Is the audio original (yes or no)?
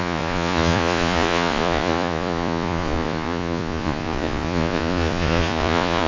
no